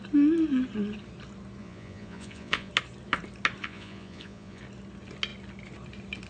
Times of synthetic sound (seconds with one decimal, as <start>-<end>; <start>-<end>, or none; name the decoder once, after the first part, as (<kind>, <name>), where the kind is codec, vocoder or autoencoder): 1.6-2.7 (vocoder, Vocos); 3.6-4.6